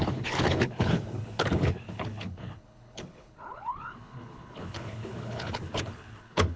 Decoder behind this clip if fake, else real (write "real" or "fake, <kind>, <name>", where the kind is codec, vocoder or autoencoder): fake, codec, HILCodec